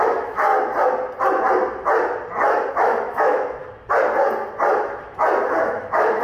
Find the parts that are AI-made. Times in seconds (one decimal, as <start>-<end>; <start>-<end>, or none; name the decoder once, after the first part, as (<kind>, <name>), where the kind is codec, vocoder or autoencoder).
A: 0.0-0.5 (autoencoder, DAC-VAE); 2.7-3.6; 5.6-6.2